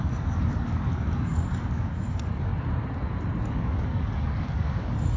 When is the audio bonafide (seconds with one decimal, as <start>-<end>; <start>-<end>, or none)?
2.5-3.4